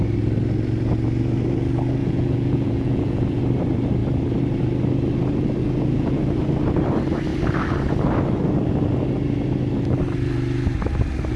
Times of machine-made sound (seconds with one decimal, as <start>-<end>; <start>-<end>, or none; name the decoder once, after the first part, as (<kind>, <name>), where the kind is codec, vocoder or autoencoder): 2.0-3.4 (vocoder, Vocos); 5.6-6.2